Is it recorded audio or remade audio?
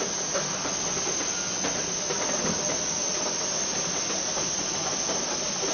recorded